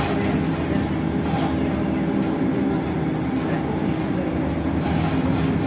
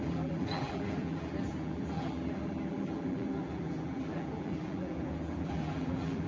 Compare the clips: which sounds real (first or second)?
first